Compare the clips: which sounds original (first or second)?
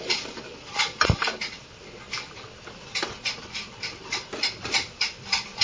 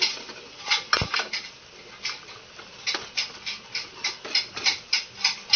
second